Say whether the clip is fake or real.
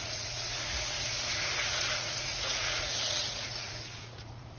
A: fake